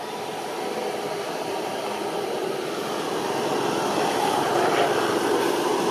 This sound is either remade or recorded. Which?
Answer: remade